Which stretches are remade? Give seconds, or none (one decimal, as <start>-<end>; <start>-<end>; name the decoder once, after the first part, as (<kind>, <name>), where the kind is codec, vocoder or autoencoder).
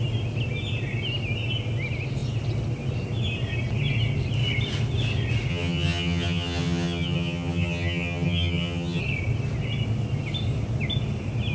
5.5-9.0 (vocoder, HiFi-GAN)